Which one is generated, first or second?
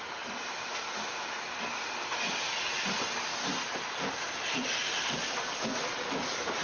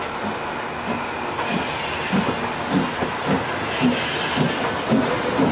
first